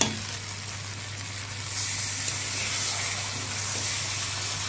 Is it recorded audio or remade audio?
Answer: recorded